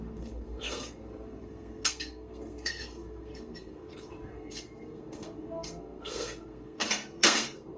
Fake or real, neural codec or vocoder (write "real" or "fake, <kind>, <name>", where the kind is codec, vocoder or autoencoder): fake, codec, SNAC